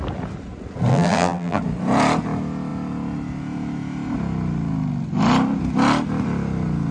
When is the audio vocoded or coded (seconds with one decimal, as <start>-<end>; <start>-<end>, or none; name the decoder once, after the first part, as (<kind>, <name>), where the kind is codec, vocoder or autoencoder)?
0.9-1.6 (vocoder, BigVGAN v2)